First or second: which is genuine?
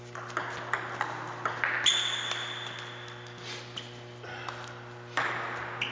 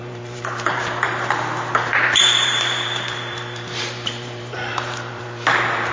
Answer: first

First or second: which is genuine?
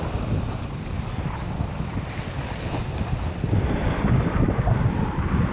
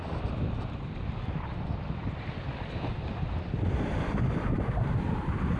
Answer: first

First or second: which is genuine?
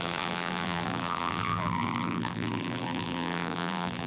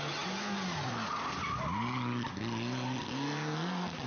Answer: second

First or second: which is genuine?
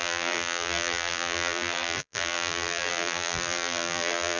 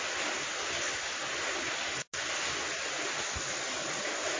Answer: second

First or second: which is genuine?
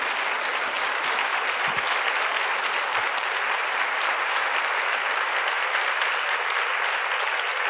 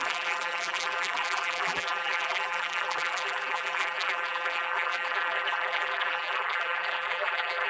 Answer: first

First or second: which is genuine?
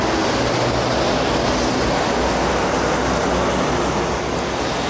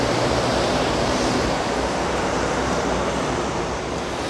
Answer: first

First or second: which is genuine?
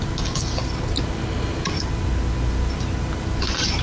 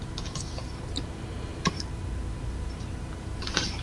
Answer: first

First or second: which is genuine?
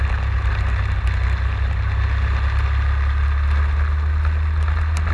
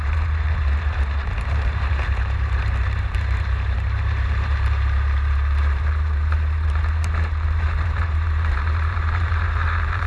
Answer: first